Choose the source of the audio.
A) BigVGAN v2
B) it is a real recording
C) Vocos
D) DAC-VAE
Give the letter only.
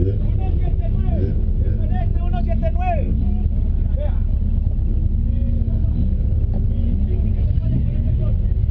B